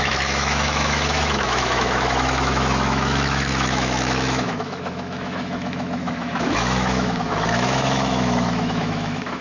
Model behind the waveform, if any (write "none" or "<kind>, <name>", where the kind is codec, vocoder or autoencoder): autoencoder, DAC-VAE